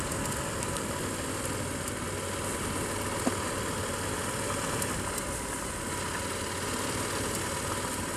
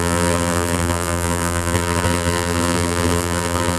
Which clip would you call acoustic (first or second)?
first